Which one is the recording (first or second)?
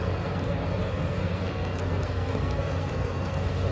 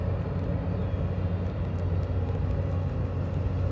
second